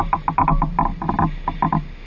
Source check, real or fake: real